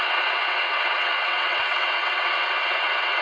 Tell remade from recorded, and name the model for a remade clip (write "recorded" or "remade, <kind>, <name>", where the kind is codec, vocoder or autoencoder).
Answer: remade, vocoder, WaveNeXt